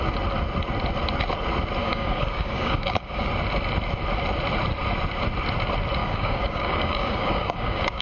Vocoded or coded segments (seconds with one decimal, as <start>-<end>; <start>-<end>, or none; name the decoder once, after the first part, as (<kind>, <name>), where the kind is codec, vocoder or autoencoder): 1.8-3.3 (codec, DAC); 6.0-8.0